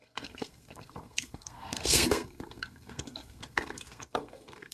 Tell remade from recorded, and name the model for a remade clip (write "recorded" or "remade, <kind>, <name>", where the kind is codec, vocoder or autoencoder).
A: remade, codec, SNAC